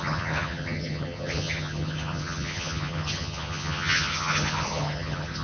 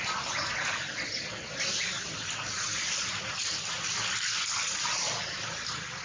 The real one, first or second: second